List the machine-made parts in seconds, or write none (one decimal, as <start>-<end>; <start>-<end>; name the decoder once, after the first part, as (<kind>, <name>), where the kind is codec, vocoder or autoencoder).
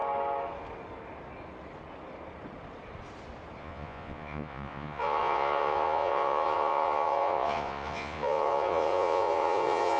3.6-10.0 (vocoder, Vocos)